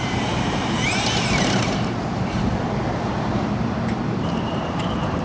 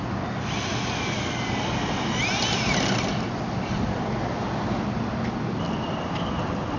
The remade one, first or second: first